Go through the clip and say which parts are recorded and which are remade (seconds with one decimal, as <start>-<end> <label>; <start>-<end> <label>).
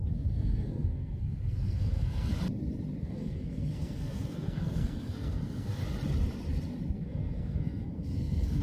0.0-2.3 remade; 2.3-3.0 recorded; 3.0-5.8 remade; 5.8-6.9 recorded; 6.9-8.6 remade